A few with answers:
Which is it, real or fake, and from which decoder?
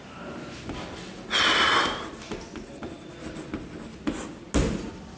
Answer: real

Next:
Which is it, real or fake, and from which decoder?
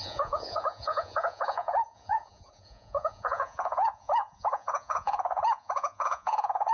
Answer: fake, vocoder, Vocos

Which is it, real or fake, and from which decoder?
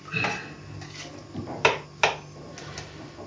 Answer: real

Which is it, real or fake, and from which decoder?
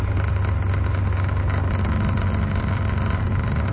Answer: real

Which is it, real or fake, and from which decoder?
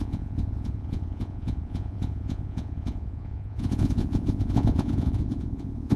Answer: fake, vocoder, Vocos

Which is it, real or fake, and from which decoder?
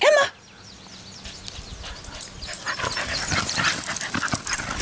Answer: real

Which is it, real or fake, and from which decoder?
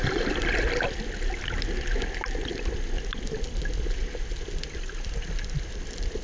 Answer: real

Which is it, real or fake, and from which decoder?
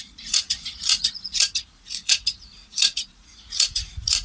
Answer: fake, vocoder, Vocos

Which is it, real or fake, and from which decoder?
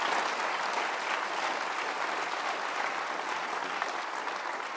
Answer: real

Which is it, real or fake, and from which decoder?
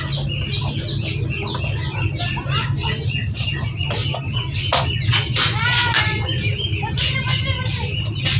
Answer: real